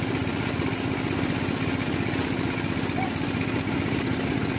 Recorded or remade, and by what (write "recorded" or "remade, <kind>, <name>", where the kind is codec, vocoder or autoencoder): recorded